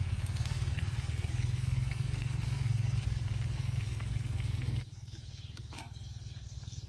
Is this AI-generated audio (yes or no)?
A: yes